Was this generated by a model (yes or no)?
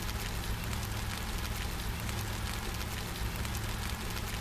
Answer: no